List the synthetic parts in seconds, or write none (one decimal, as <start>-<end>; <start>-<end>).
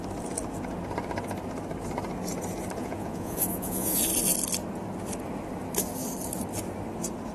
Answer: 2.8-4.0